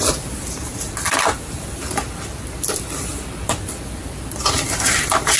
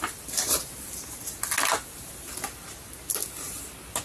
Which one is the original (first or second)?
second